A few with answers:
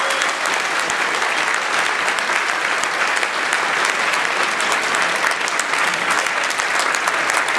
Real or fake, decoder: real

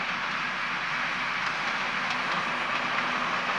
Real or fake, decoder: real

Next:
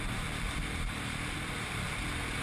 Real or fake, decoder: fake, vocoder, BigVGAN v2